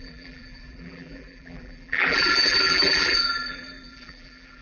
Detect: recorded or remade remade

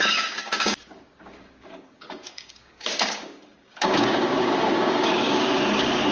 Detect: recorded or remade remade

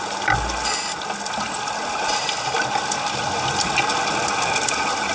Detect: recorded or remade recorded